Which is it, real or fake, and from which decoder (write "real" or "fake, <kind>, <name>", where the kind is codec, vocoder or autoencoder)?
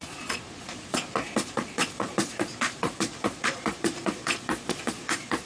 fake, vocoder, Vocos